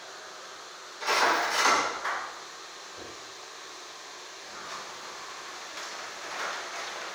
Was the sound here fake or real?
real